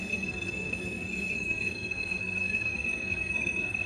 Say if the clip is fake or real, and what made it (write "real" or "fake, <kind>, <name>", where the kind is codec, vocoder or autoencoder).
fake, codec, SNAC